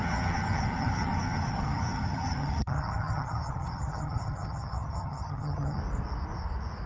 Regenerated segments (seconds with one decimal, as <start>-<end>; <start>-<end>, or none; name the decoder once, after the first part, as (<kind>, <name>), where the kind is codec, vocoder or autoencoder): 0.0-5.8 (vocoder, HiFi-GAN)